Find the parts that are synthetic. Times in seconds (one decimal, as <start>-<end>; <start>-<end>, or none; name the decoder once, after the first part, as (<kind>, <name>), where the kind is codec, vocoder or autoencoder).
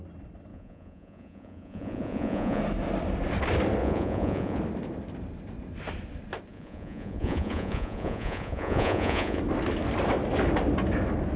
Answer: 0.5-2.6 (vocoder, Vocos); 3.8-4.6; 6.5-9.4